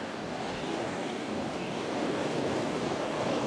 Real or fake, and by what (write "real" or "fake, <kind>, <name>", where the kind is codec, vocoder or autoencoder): fake, codec, DAC